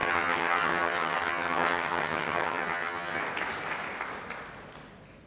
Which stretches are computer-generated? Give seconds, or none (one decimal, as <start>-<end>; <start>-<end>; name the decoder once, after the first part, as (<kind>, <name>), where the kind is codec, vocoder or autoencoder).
0.0-3.2 (vocoder, HiFi-GAN)